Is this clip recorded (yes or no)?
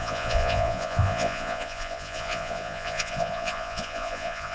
no